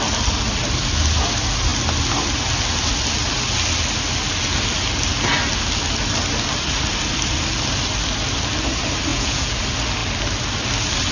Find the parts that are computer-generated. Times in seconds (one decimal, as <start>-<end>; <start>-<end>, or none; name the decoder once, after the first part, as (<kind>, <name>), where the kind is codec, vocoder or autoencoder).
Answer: 9.1-9.6 (vocoder, Vocos)